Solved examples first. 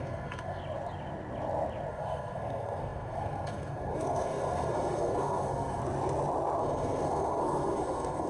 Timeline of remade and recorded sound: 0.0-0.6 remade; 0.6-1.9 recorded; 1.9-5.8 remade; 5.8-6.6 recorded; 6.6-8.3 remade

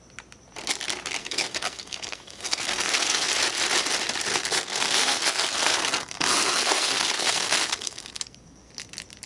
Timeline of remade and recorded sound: 0.0-1.2 recorded; 1.2-3.3 remade; 3.3-4.3 recorded; 4.3-8.7 remade; 8.7-9.3 recorded

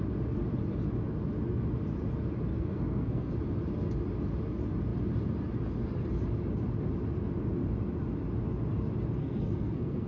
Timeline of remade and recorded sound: 0.0-2.5 recorded; 2.5-3.3 remade; 3.3-9.2 recorded; 9.2-10.1 remade